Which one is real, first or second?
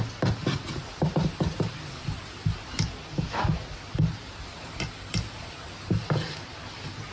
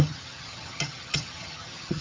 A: first